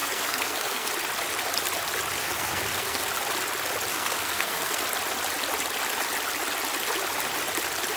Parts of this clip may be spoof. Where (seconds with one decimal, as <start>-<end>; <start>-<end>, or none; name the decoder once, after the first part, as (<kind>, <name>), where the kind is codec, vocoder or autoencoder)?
0.0-0.9 (codec, SNAC); 2.2-3.1; 3.9-4.8